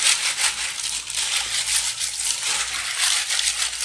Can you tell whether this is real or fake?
real